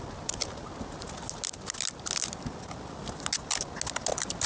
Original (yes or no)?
yes